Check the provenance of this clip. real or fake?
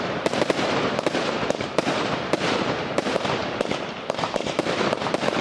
fake